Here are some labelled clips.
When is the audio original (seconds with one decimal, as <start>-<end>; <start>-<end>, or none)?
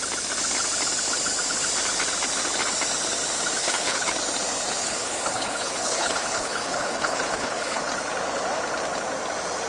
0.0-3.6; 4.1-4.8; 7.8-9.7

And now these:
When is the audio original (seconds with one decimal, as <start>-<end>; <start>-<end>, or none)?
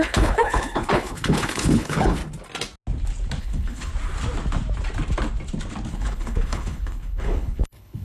2.2-3.4; 3.9-5.9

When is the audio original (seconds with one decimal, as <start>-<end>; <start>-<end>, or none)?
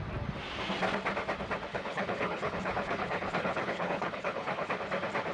0.0-1.7; 4.7-5.3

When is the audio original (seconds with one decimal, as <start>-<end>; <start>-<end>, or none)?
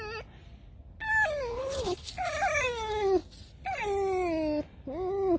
0.0-1.5; 2.1-5.4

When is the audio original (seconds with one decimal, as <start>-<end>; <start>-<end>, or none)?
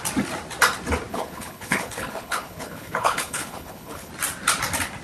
0.0-1.1; 4.1-5.0